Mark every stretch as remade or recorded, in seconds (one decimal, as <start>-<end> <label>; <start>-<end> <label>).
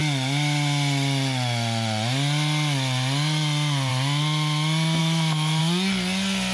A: 0.0-5.0 recorded; 5.0-5.6 remade; 5.6-6.5 recorded